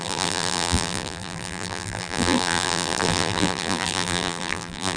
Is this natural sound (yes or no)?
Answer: no